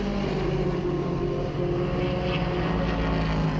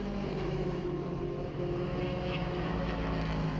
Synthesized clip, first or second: second